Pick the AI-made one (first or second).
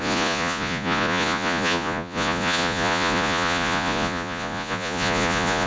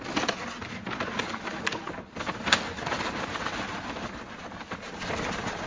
first